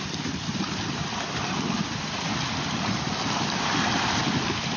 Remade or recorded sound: remade